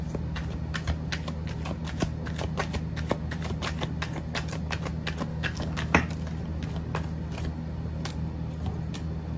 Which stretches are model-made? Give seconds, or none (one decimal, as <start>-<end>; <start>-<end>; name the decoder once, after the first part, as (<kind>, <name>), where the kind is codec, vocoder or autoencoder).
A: 5.3-6.1 (codec, DAC)